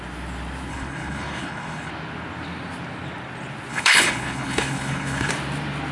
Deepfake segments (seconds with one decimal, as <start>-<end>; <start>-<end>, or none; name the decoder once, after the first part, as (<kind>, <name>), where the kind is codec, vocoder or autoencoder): 0.7-1.9 (codec, HILCodec); 3.7-5.3